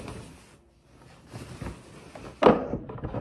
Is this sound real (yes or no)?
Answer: yes